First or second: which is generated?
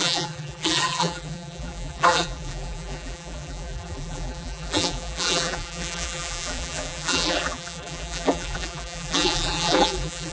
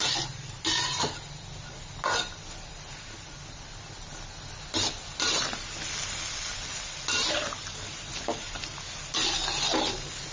first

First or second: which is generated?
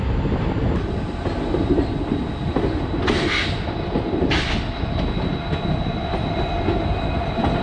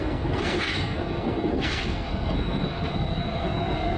second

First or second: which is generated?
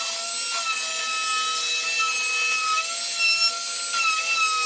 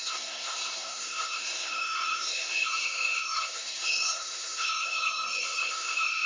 second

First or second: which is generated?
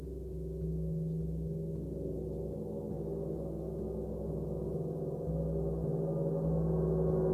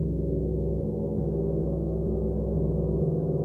second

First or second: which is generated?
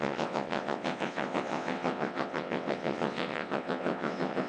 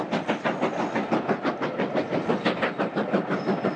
first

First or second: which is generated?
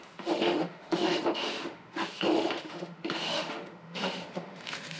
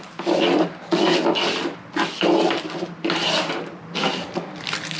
first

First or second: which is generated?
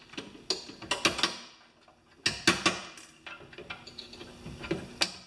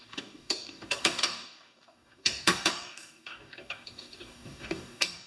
second